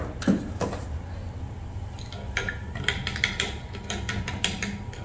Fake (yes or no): no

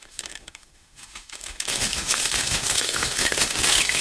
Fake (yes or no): yes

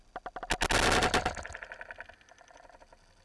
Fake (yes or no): no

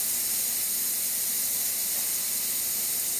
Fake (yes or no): no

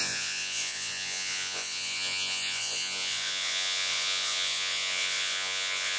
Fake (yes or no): yes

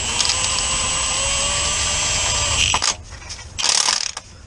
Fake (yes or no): no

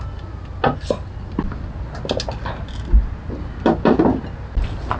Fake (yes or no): no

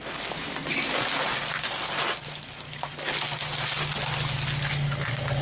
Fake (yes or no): no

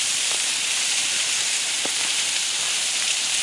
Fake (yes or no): yes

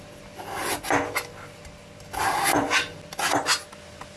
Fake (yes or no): no